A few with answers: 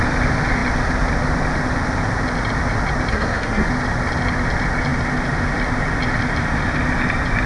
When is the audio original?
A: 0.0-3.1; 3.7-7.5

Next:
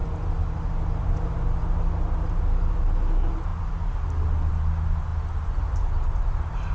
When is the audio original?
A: 0.0-6.7

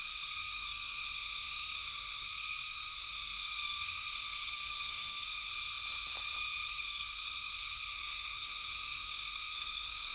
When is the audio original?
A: 5.5-6.7

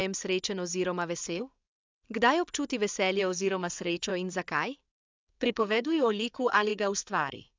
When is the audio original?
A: 0.0-1.2; 1.6-3.2; 4.1-5.4

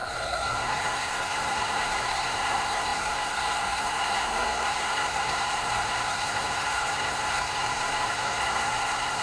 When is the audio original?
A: none

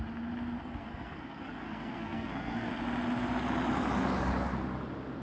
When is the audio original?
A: 0.0-0.6; 2.7-5.2

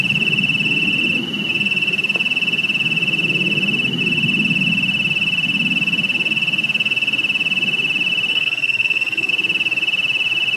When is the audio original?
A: 0.0-8.3; 9.3-10.6